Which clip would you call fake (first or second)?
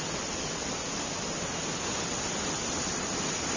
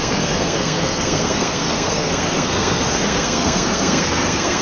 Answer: second